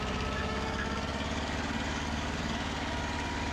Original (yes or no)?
no